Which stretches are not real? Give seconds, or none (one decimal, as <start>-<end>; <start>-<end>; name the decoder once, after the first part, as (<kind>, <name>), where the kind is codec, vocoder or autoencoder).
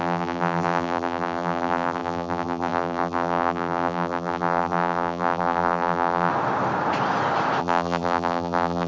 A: 0.0-6.3 (vocoder, BigVGAN v2); 7.6-8.9